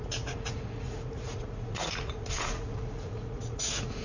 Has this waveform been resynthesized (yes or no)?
yes